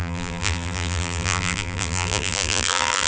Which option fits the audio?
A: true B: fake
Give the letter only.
B